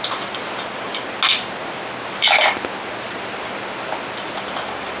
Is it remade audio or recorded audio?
recorded